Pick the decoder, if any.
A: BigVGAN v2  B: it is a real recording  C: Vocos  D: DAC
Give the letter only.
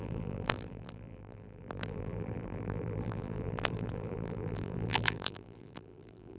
A